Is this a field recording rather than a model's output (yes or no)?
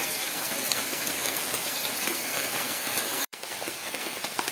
no